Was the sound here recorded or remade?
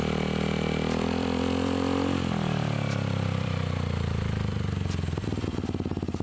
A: remade